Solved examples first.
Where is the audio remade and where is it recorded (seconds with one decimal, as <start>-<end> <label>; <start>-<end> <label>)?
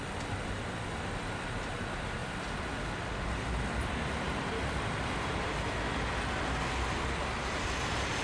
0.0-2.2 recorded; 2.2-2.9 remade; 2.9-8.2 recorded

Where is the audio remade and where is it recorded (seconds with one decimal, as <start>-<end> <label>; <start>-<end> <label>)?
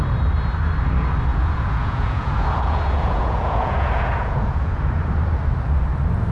0.0-1.3 recorded; 1.3-5.1 remade; 5.1-6.3 recorded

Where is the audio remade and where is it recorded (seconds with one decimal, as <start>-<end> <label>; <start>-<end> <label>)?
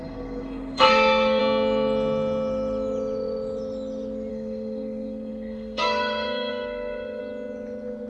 0.0-1.4 remade; 1.4-4.3 recorded; 4.3-7.2 remade; 7.2-8.1 recorded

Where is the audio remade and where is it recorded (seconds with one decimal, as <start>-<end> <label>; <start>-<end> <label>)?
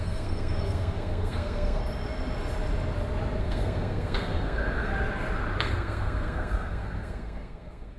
0.0-1.8 remade; 1.8-3.4 recorded; 3.4-4.9 remade; 4.9-5.6 recorded; 5.6-8.0 remade